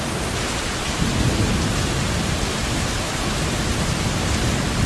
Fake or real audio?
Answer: fake